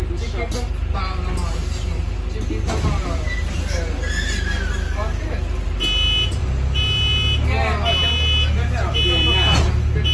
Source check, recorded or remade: recorded